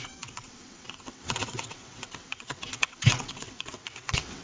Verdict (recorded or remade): remade